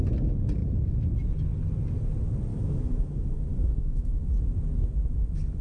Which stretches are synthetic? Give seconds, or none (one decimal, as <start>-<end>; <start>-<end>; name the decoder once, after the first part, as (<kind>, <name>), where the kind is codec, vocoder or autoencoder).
2.5-4.1 (autoencoder, DAC-VAE)